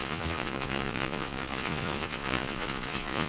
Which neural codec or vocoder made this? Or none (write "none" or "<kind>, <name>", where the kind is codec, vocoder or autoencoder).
vocoder, Vocos